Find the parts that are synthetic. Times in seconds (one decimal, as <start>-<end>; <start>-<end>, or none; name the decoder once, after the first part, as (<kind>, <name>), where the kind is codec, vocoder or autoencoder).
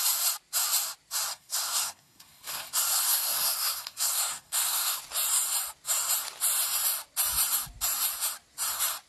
1.3-5.0 (codec, SNAC)